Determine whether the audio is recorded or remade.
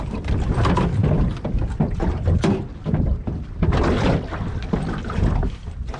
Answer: recorded